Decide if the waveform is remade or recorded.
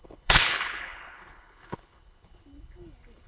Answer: remade